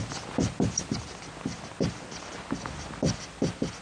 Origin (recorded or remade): recorded